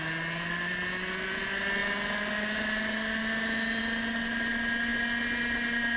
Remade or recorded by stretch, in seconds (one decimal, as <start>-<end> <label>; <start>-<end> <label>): 0.0-6.0 recorded